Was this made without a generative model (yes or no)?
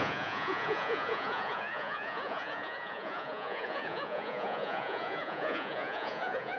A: no